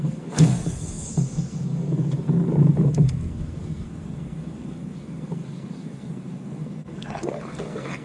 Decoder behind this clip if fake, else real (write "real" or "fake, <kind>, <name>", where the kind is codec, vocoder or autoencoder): fake, codec, SNAC